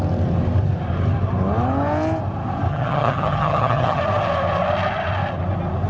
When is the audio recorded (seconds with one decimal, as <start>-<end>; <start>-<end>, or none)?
0.0-2.7; 4.0-5.9